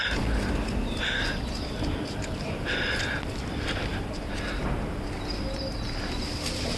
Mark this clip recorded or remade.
recorded